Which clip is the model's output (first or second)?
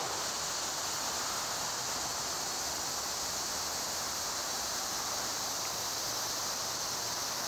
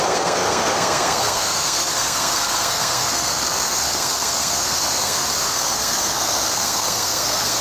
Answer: second